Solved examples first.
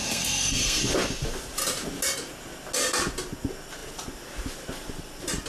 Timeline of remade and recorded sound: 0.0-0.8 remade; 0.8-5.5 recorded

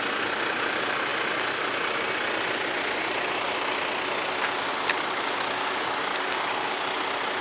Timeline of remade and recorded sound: 0.0-6.1 recorded; 6.1-6.8 remade; 6.8-7.4 recorded

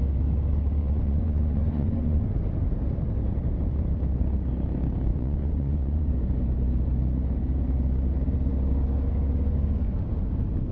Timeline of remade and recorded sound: 0.0-0.8 recorded; 0.8-2.2 remade; 2.2-5.1 recorded; 5.1-6.1 remade; 6.1-10.7 recorded

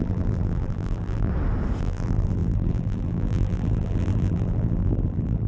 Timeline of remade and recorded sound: 0.0-1.3 remade; 1.3-1.8 recorded; 1.8-5.5 remade

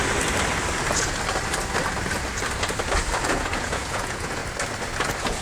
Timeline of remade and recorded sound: 0.0-3.2 recorded; 3.2-4.4 remade; 4.4-5.0 recorded; 5.0-5.4 remade

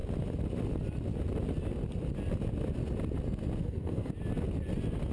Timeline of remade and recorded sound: 0.0-3.6 recorded; 3.6-4.1 remade; 4.1-5.1 recorded

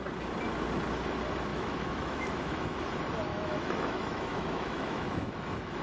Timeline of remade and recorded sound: 0.0-1.5 recorded; 1.5-2.8 remade; 2.8-3.3 recorded; 3.3-5.8 remade

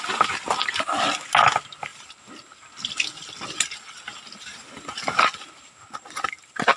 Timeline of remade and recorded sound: 0.0-6.8 recorded